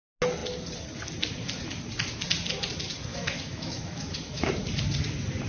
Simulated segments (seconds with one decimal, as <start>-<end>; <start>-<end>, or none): 3.1-4.5